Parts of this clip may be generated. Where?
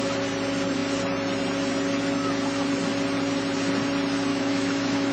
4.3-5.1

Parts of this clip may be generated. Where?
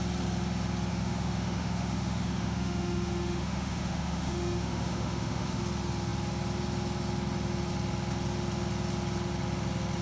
0.9-5.6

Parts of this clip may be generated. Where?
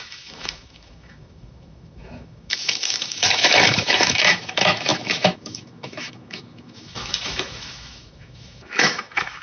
0.0-9.4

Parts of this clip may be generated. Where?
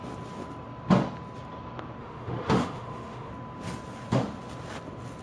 2.0-3.3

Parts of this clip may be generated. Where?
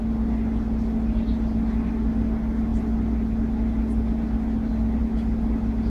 none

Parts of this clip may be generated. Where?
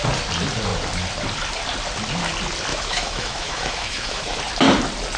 2.7-4.4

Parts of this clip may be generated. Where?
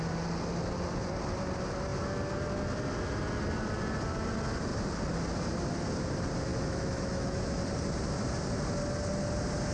6.5-7.6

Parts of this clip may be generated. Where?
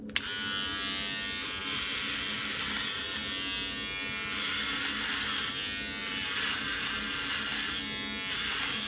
none